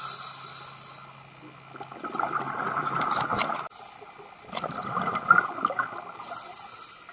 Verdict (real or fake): real